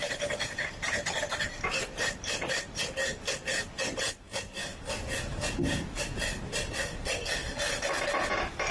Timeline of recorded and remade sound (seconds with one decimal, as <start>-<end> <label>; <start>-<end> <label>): 0.0-4.7 remade; 4.7-5.2 recorded; 5.2-7.4 remade; 7.4-8.7 recorded